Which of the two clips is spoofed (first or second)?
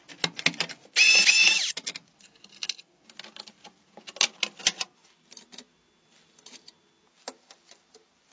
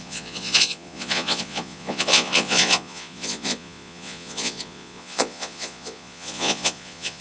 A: second